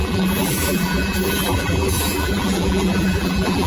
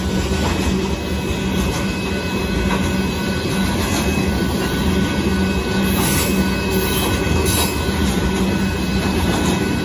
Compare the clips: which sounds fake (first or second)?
first